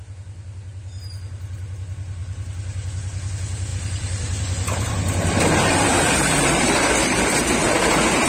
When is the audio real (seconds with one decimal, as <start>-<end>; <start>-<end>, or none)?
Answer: 0.0-3.7; 6.9-8.3